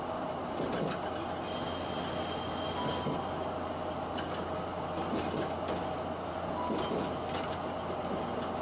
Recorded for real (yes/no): yes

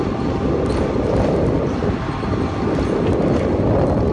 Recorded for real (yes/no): yes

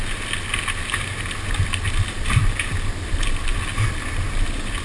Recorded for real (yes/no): yes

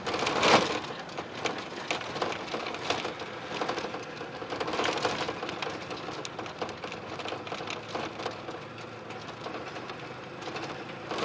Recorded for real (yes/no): yes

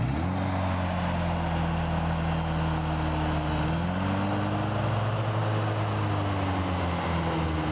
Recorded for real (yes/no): yes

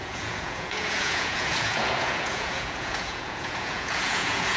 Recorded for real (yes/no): no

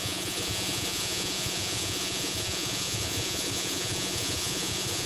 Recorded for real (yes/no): no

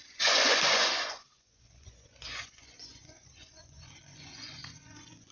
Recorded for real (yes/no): no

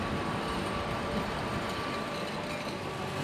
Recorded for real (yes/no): yes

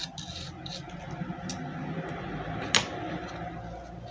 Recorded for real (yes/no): yes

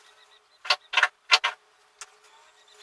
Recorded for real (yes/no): yes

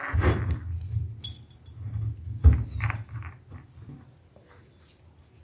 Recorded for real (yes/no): yes